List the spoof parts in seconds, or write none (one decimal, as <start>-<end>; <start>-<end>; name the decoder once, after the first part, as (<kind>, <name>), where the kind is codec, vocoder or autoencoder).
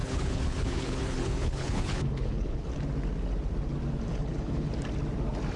0.0-2.7 (codec, HILCodec); 4.1-4.7